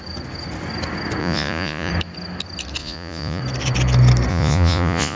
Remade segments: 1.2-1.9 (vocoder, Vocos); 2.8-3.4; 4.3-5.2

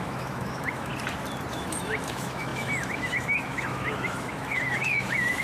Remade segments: 0.0-0.9 (autoencoder, DAC-VAE); 1.5-5.4

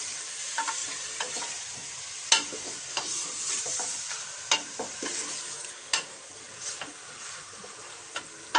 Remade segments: 0.0-1.8 (vocoder, BigVGAN v2); 3.5-8.6

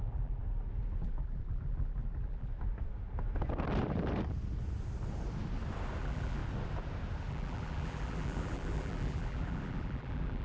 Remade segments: 0.0-0.4 (vocoder, BigVGAN v2); 1.0-2.5; 6.0-6.4; 7.3-10.4

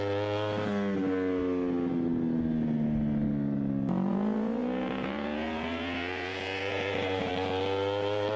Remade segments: 4.1-7.3 (vocoder, Vocos)

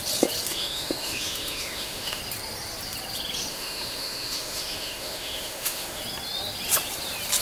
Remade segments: 0.5-2.2 (autoencoder, DAC-VAE); 3.5-6.0